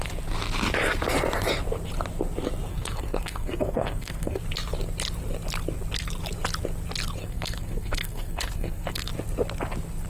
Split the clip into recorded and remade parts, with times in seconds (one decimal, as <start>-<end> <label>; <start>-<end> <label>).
0.0-2.7 recorded; 2.7-4.4 remade; 4.4-7.2 recorded; 7.2-9.1 remade; 9.1-10.1 recorded